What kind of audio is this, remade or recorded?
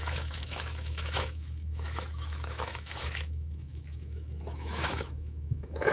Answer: remade